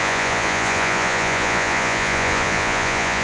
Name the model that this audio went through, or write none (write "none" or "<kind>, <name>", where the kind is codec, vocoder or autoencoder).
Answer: vocoder, Vocos